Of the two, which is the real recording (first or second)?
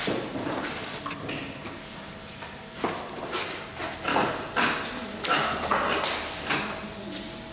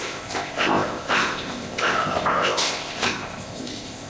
first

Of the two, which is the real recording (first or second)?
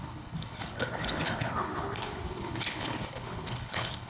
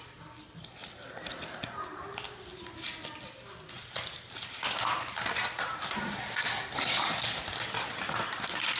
second